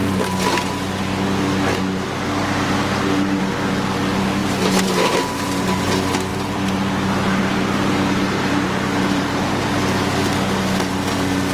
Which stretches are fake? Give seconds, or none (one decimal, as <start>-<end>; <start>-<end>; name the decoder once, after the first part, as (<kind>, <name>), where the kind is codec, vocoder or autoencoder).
4.4-5.0 (vocoder, BigVGAN v2); 6.3-9.7